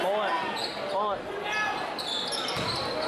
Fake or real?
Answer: real